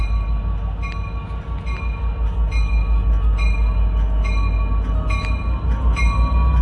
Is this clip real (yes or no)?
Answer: yes